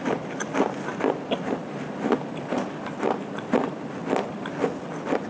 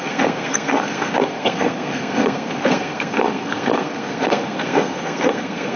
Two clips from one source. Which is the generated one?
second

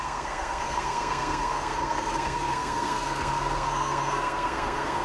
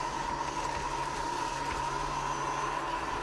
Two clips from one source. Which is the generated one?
first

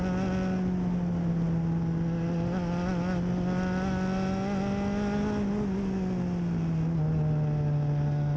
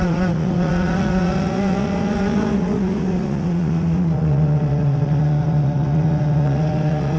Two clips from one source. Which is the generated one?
second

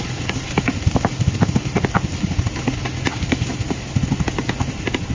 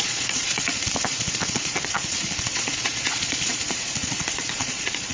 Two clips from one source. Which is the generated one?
second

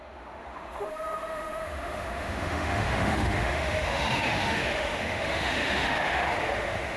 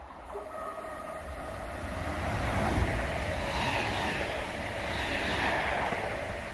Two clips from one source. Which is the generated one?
first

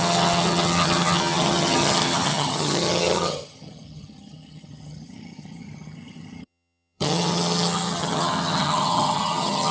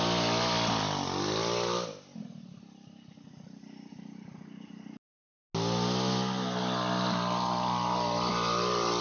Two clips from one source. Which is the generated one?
first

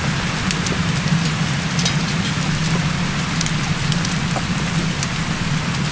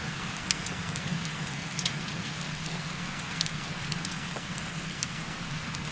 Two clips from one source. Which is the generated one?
second